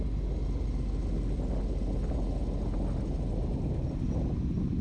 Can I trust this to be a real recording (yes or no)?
yes